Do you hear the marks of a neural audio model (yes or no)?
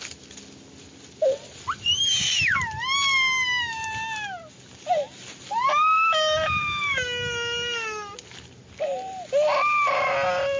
no